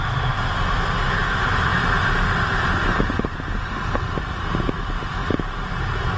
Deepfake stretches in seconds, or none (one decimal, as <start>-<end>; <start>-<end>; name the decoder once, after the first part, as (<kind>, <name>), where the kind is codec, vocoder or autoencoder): none